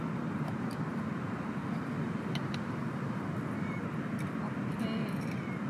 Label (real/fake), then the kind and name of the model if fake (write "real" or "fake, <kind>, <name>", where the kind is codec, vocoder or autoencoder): fake, vocoder, BigVGAN v2